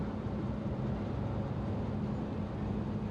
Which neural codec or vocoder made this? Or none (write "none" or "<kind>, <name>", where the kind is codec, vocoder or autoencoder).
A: none